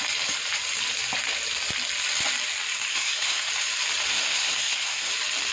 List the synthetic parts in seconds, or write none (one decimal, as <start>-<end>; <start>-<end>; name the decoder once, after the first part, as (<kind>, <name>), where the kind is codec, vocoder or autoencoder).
2.9-3.5 (codec, SNAC); 4.1-5.1